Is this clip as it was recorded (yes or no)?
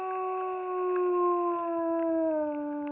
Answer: yes